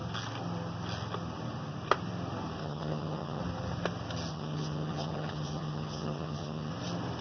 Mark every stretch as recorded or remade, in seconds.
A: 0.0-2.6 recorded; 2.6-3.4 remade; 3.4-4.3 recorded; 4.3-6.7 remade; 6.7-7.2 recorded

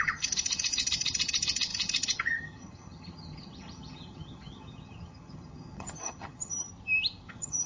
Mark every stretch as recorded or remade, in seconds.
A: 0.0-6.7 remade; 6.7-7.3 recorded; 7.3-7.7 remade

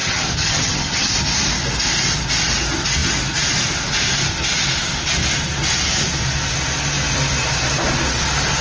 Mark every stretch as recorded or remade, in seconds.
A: 0.0-1.1 remade; 1.1-8.6 recorded